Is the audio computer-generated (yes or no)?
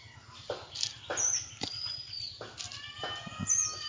no